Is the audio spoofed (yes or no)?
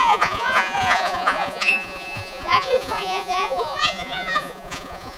yes